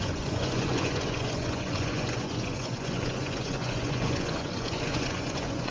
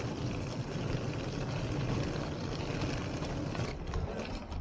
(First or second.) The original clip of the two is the second